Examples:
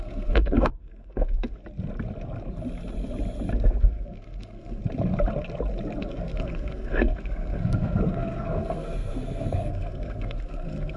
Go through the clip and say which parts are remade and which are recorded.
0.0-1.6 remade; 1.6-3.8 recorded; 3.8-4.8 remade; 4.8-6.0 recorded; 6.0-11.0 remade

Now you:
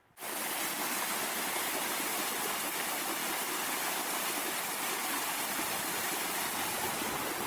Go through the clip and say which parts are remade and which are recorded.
0.0-1.3 recorded; 1.3-7.5 remade

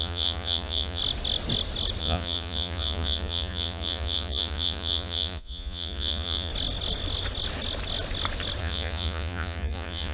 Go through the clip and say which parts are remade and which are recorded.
0.0-1.0 remade; 1.0-2.0 recorded; 2.0-6.5 remade; 6.5-8.6 recorded; 8.6-10.1 remade

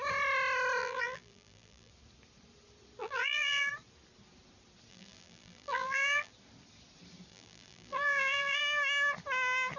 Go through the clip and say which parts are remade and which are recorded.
0.0-0.8 recorded; 0.8-1.9 remade; 1.9-3.0 recorded; 3.0-3.7 remade; 3.7-4.9 recorded; 4.9-6.3 remade; 6.3-7.3 recorded; 7.3-8.6 remade; 8.6-9.8 recorded

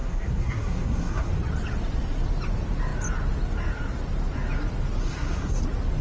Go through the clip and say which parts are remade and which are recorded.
0.0-1.3 remade; 1.3-5.0 recorded; 5.0-5.6 remade; 5.6-6.0 recorded

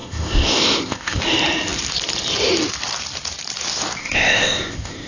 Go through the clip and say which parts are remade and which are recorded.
0.0-1.2 remade; 1.2-4.0 recorded; 4.0-5.1 remade

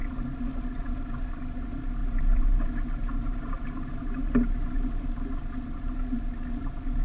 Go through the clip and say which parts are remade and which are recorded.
0.0-2.0 recorded; 2.0-4.8 remade; 4.8-7.0 recorded